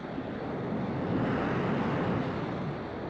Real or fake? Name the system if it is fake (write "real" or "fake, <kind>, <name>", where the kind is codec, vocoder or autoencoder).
real